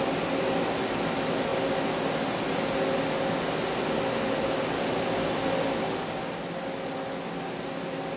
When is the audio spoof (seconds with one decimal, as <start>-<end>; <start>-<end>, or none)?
none